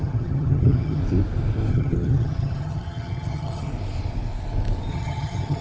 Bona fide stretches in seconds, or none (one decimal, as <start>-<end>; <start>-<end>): 1.0-1.7; 3.7-4.9